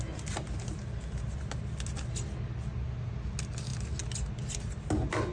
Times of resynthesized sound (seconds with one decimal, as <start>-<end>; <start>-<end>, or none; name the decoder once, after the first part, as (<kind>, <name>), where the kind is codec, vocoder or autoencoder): none